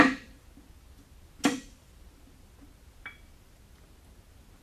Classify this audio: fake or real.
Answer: real